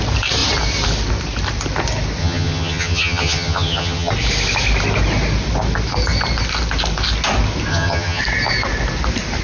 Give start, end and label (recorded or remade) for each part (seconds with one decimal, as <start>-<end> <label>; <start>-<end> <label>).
0.0-2.2 recorded; 2.2-4.1 remade; 4.1-7.7 recorded; 7.7-8.2 remade; 8.2-9.4 recorded